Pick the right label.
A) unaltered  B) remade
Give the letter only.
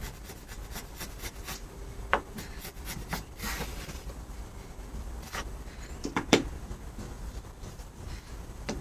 B